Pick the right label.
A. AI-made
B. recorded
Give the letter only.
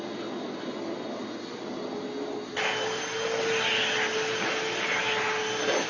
B